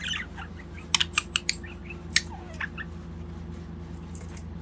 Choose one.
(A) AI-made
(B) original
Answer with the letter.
B